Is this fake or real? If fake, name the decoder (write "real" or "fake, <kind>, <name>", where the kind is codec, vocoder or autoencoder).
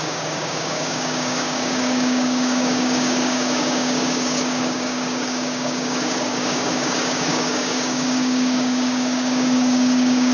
fake, codec, DAC